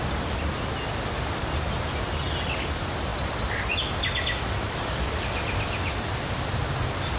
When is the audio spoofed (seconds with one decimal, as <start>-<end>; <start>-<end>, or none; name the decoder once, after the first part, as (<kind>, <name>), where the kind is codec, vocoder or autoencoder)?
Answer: none